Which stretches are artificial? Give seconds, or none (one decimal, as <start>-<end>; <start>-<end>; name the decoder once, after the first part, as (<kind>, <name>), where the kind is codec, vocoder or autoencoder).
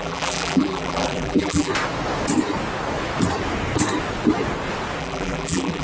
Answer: 0.0-1.7 (vocoder, BigVGAN v2); 5.0-5.8